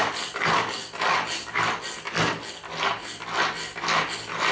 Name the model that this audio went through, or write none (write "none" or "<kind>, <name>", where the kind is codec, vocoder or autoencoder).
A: none